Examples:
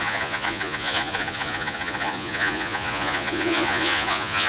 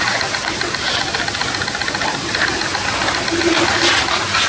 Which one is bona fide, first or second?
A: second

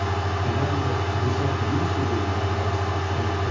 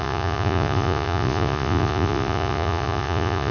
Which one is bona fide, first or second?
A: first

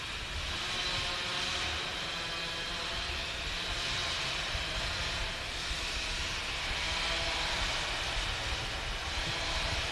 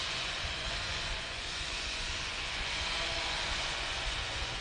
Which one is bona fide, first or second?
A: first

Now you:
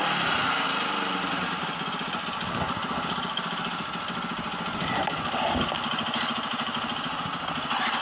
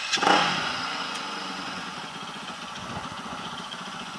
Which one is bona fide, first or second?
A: first